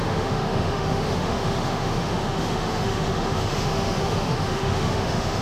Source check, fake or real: fake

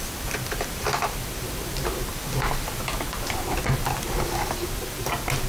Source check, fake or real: real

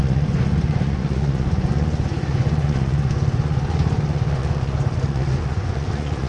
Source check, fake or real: fake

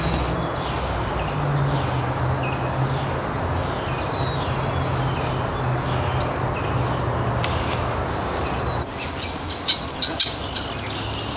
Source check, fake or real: real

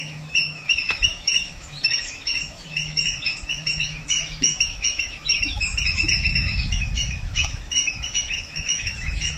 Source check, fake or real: fake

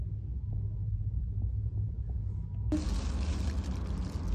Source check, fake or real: real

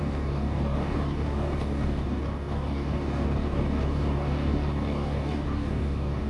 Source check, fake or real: fake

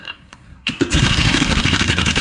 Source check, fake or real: fake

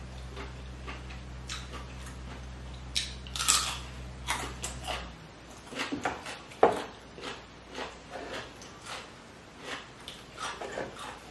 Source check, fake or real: fake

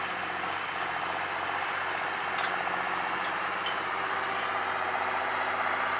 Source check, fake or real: real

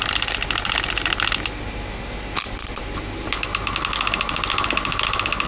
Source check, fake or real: real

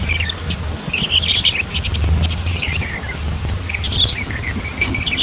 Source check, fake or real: real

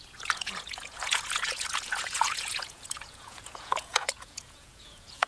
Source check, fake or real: fake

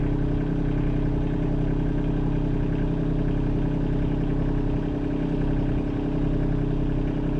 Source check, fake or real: real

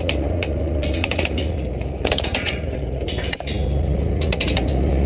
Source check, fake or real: fake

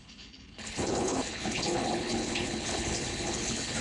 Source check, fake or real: fake